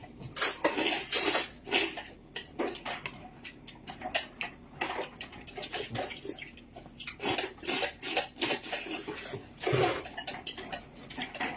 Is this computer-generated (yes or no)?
no